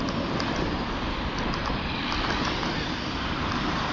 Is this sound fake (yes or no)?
no